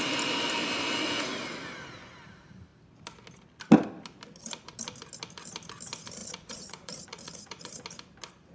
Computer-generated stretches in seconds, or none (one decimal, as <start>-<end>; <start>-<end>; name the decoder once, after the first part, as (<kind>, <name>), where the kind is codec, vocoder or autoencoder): 6.2-7.7 (vocoder, Vocos)